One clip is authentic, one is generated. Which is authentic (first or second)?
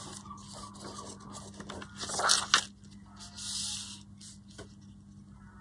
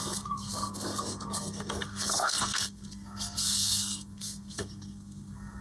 first